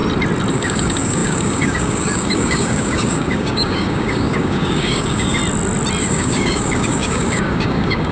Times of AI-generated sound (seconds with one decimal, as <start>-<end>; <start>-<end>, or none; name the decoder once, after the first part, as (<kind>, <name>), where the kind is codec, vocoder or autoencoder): 0.5-5.4 (codec, DAC); 6.0-8.1